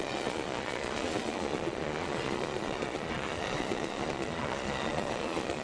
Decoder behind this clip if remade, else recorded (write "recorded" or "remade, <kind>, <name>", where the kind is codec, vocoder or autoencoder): remade, vocoder, Vocos